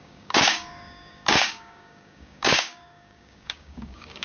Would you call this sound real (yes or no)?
no